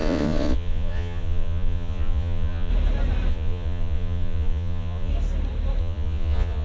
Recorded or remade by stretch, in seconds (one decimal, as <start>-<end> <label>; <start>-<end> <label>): 0.0-2.7 remade; 2.7-3.3 recorded; 3.3-5.1 remade; 5.1-5.8 recorded; 5.8-6.6 remade